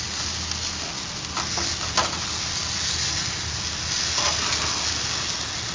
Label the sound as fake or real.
real